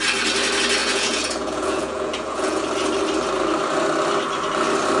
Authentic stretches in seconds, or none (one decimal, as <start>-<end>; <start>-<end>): 0.0-0.8; 2.6-5.0